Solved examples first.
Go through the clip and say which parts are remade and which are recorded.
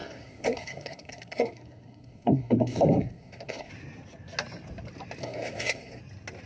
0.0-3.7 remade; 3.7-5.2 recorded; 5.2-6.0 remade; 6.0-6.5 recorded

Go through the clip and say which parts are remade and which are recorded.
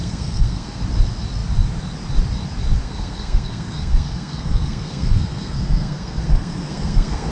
0.0-0.8 remade; 0.8-2.8 recorded; 2.8-7.3 remade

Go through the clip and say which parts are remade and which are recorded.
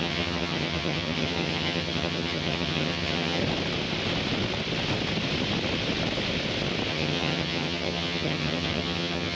0.0-3.4 remade; 3.4-6.9 recorded; 6.9-9.3 remade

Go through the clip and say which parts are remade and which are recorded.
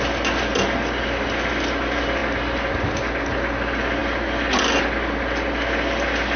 0.0-6.4 recorded